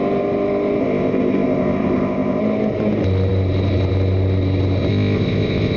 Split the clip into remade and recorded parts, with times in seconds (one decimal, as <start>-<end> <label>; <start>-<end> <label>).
0.0-0.8 recorded; 0.8-2.4 remade; 2.4-4.9 recorded; 4.9-5.8 remade